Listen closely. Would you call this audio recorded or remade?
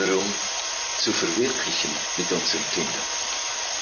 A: recorded